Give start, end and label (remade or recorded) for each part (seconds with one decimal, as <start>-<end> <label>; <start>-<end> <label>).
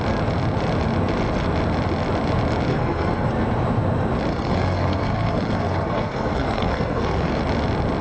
0.0-2.7 recorded; 2.7-3.3 remade; 3.3-4.3 recorded; 4.3-7.4 remade; 7.4-8.0 recorded